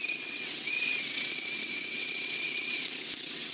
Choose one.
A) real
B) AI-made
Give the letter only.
B